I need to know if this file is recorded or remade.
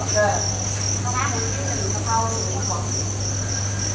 recorded